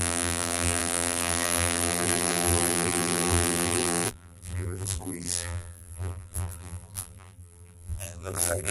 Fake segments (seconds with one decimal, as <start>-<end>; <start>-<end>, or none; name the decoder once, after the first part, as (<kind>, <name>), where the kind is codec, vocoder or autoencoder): 0.0-8.7 (vocoder, BigVGAN v2)

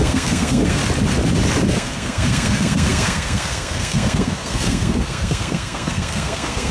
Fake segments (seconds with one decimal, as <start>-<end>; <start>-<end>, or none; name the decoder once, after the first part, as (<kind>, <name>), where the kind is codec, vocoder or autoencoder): 0.0-0.8 (codec, SNAC); 1.7-6.7